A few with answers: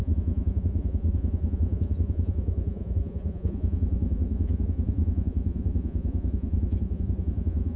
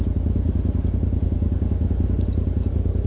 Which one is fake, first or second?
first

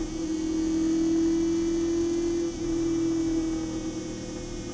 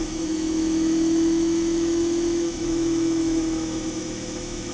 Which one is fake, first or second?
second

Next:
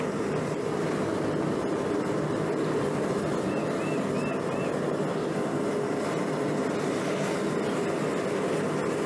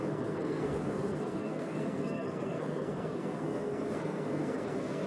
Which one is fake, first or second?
second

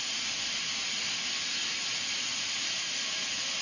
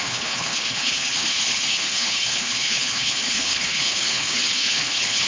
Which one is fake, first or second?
second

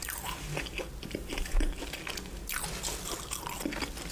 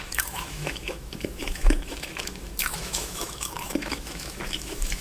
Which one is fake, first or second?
second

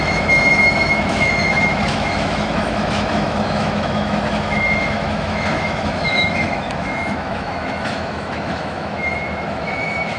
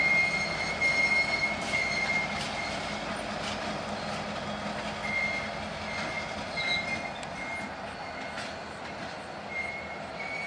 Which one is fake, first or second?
first